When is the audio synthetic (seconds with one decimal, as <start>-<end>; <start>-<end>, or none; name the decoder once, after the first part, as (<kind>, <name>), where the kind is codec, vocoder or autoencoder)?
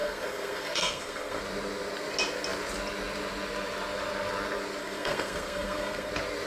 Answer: 0.0-1.4 (codec, SNAC); 4.8-6.1